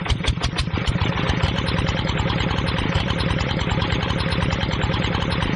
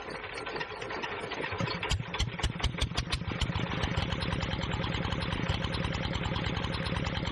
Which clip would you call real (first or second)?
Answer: second